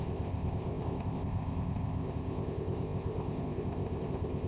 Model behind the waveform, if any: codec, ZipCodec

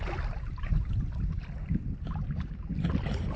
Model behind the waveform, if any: none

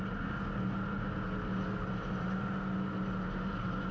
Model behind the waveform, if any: none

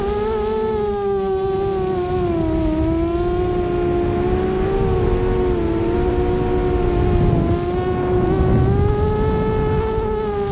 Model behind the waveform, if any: none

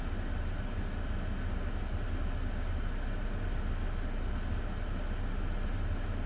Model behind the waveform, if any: none